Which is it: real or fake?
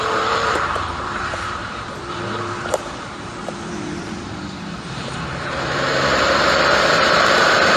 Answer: fake